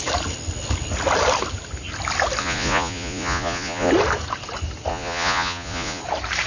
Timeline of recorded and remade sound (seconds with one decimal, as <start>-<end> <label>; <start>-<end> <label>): 0.0-2.4 recorded; 2.4-3.9 remade; 3.9-4.9 recorded; 4.9-6.0 remade; 6.0-6.5 recorded